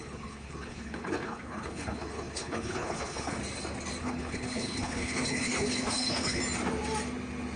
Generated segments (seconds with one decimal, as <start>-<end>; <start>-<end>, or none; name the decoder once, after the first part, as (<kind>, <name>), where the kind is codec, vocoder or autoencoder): 0.0-3.4 (codec, HILCodec); 4.0-6.4